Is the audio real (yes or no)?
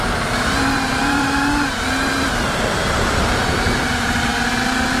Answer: no